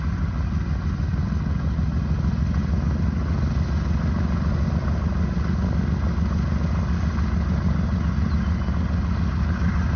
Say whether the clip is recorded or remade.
recorded